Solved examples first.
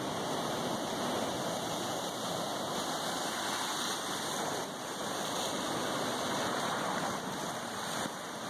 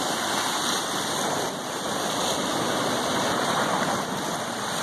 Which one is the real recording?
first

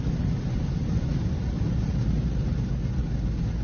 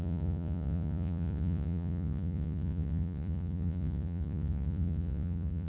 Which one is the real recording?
first